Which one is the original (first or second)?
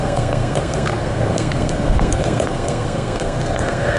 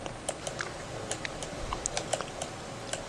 second